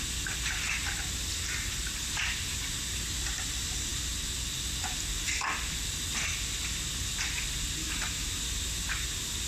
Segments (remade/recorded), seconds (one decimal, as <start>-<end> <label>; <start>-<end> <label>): 0.0-7.8 recorded; 7.8-8.4 remade; 8.4-9.5 recorded